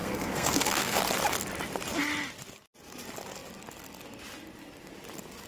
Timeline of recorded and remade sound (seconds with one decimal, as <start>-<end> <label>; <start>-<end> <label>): 0.0-1.0 remade; 1.0-5.5 recorded